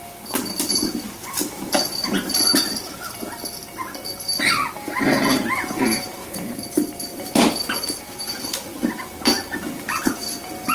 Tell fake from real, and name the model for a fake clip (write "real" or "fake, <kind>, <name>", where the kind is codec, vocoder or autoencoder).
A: real